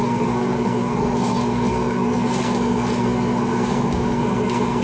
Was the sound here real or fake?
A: fake